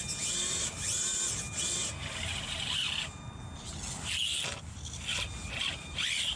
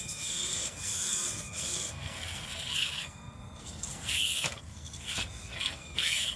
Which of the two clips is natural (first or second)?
first